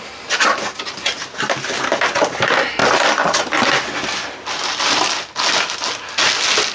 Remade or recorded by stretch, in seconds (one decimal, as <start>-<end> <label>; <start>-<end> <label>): 0.0-6.7 recorded